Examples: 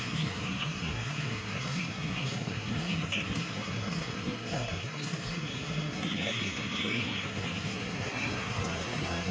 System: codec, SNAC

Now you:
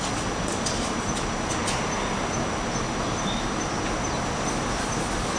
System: none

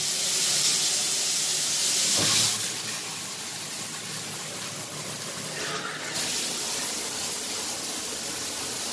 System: none